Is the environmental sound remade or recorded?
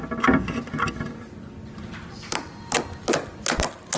recorded